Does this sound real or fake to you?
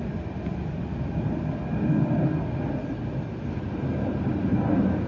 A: real